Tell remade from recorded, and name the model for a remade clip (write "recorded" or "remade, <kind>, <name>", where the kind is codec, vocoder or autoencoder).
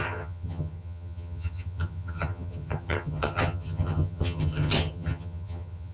remade, vocoder, HiFi-GAN